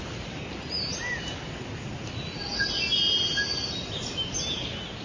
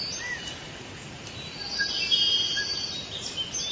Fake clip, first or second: second